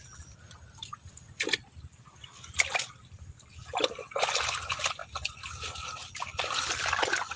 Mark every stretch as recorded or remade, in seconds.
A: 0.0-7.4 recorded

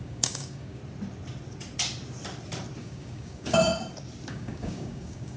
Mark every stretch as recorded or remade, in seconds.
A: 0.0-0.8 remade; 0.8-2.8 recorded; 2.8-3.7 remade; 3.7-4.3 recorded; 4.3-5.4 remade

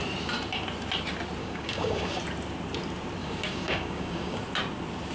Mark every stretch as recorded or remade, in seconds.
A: 0.0-1.4 recorded; 1.4-2.2 remade; 2.2-3.2 recorded; 3.2-4.4 remade; 4.4-5.1 recorded

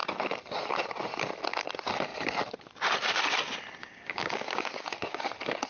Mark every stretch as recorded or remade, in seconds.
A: 0.0-3.8 recorded; 3.8-5.3 remade; 5.3-5.7 recorded

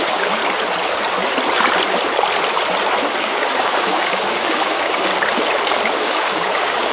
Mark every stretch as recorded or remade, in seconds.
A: 0.0-0.4 remade; 0.4-3.2 recorded; 3.2-5.1 remade; 5.1-5.9 recorded; 5.9-6.9 remade

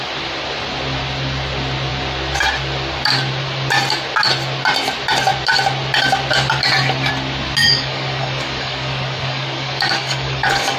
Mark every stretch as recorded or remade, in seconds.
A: 0.0-7.6 recorded; 7.6-10.8 remade

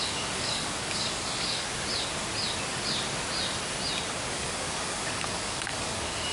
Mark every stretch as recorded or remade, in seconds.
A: 0.0-1.7 remade; 1.7-4.3 recorded; 4.3-6.3 remade